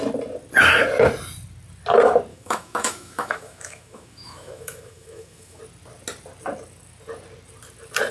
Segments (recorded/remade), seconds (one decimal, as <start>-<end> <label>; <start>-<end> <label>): 0.0-2.3 recorded; 2.3-5.6 remade; 5.6-8.1 recorded